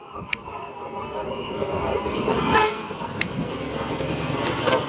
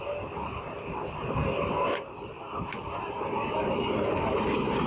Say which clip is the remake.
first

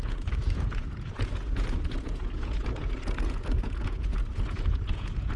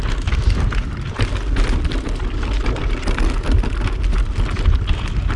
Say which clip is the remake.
first